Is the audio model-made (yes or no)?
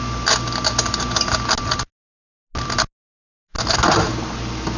no